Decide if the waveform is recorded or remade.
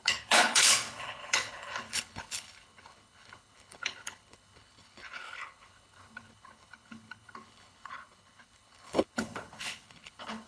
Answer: remade